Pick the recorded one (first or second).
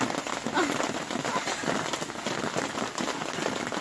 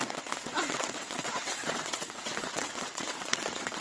first